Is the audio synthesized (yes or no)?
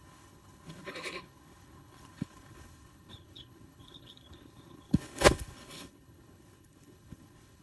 yes